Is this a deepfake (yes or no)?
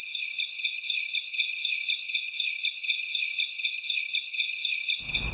no